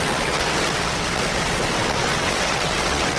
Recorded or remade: remade